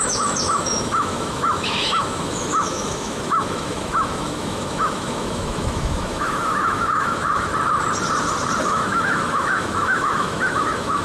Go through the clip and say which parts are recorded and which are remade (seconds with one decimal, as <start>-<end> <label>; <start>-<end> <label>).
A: 0.0-7.5 remade; 7.5-8.6 recorded; 8.6-11.0 remade